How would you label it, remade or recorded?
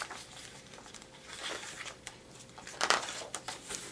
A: remade